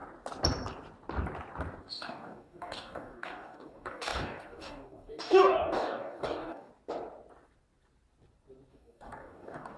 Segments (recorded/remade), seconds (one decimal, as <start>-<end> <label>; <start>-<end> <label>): 0.0-1.8 recorded; 1.8-6.7 remade; 6.7-8.7 recorded; 8.7-9.8 remade

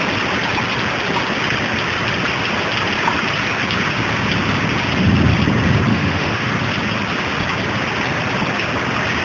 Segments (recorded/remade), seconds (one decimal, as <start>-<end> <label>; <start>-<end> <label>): 0.0-5.9 recorded; 5.9-6.5 remade; 6.5-9.2 recorded